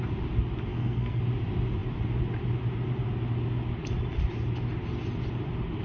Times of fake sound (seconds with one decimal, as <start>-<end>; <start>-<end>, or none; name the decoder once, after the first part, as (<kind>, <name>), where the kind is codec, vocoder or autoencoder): 0.7-1.2 (codec, SNAC)